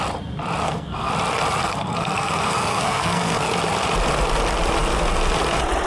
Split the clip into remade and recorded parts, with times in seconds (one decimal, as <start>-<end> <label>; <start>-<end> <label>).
0.0-0.6 recorded; 0.6-1.1 remade; 1.1-1.6 recorded; 1.6-3.5 remade; 3.5-5.9 recorded